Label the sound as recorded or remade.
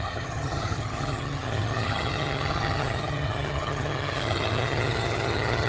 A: remade